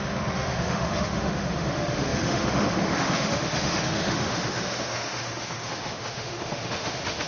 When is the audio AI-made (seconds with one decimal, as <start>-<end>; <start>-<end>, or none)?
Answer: 0.0-7.3